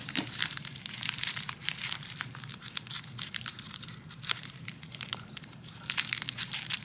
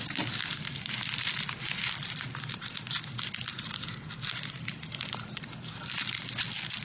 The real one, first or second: second